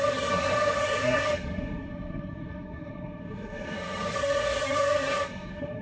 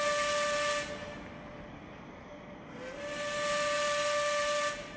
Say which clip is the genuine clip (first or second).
second